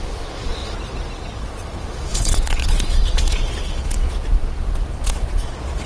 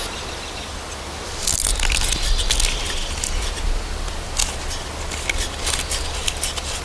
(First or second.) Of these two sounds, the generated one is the first